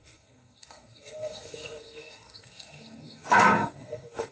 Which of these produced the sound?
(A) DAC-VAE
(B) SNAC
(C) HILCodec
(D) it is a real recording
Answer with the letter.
B